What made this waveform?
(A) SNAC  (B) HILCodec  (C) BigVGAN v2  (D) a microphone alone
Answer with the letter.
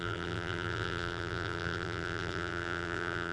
C